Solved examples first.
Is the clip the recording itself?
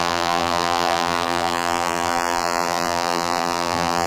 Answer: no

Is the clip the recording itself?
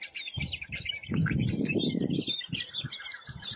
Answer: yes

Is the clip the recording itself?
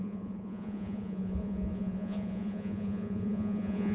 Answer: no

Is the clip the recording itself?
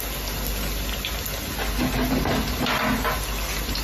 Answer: yes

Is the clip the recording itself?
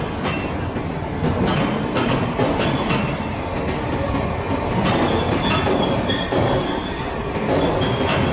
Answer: yes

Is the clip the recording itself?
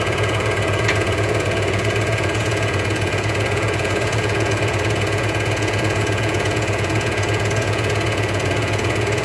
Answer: no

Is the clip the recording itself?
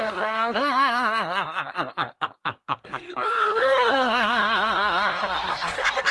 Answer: no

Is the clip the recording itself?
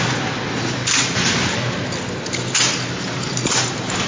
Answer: yes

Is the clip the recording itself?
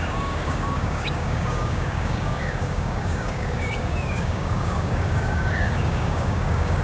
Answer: no